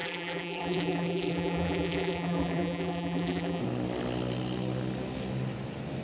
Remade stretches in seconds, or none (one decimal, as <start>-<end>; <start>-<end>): 0.0-3.6